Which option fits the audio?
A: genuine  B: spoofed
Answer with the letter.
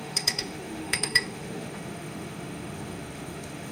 B